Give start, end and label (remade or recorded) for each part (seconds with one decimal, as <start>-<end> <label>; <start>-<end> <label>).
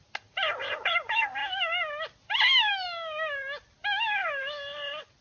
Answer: 0.0-5.2 recorded